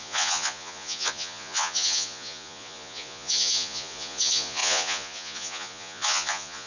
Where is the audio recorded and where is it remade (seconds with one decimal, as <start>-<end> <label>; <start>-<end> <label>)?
0.0-6.7 remade